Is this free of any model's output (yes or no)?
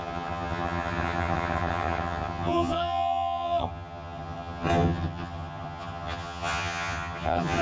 no